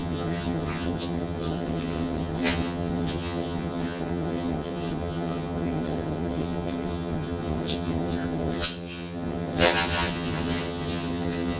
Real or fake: fake